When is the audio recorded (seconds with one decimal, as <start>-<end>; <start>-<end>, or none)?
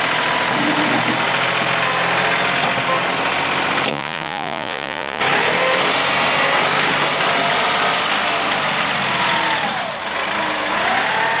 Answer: 0.0-3.9; 5.2-11.4